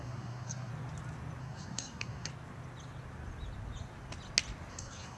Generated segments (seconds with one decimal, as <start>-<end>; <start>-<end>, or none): 0.0-0.7; 1.4-2.3; 4.7-5.2